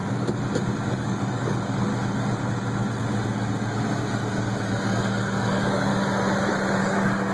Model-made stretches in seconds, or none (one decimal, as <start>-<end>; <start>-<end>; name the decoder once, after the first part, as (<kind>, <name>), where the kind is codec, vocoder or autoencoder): 0.9-1.9 (codec, DAC); 4.6-5.9; 6.8-7.3